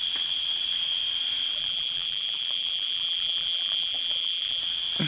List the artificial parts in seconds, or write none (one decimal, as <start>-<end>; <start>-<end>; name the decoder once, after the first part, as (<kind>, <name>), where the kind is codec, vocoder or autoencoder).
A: 1.5-4.6 (vocoder, BigVGAN v2)